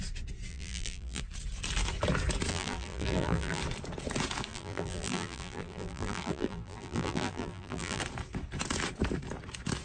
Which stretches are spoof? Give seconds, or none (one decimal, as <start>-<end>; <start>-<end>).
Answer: 0.5-1.2; 2.5-3.6; 4.5-8.0

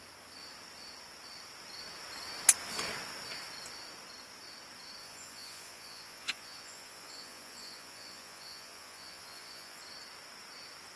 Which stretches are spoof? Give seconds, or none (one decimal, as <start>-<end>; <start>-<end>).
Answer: 5.0-9.8

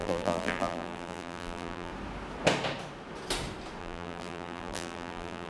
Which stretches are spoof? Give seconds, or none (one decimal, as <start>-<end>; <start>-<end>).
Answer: 0.0-1.9; 3.8-5.5

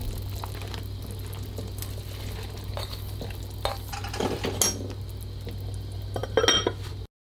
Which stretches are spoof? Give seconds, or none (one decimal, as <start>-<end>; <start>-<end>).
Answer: none

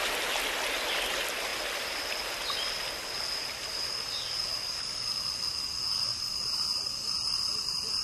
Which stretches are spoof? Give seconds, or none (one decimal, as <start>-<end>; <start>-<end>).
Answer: none